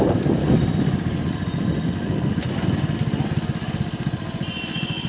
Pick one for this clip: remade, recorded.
recorded